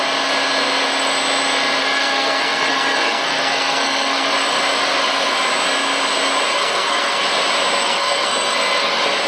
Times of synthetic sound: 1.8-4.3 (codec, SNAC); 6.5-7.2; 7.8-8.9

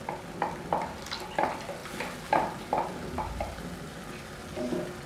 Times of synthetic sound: 1.8-3.6 (vocoder, BigVGAN v2)

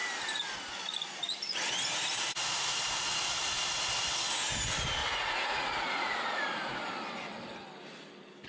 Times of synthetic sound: 5.0-6.4 (vocoder, Vocos)